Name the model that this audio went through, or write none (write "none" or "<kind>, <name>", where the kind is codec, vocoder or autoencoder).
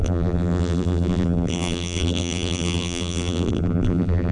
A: vocoder, BigVGAN v2